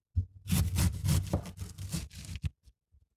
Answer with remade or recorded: recorded